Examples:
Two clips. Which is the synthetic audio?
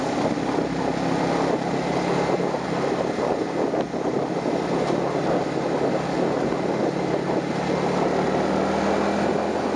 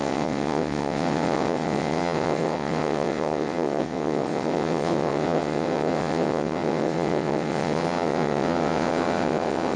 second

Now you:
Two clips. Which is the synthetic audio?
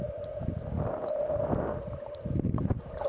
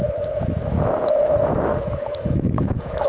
second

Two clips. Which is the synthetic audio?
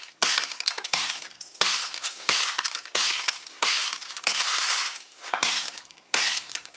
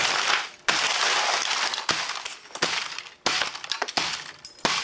first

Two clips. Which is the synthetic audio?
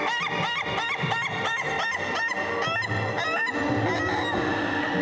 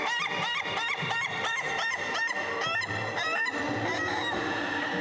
second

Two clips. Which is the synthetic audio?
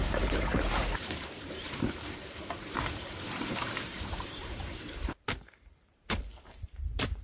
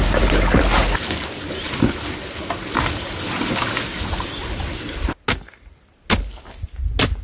first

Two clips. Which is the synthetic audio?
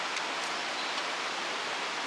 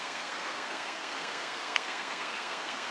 second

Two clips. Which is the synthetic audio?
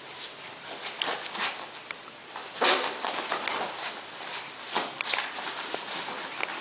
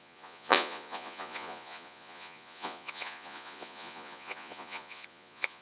second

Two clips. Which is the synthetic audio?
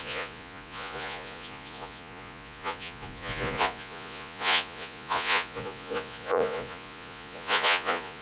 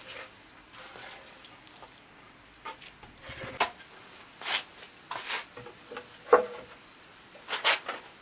first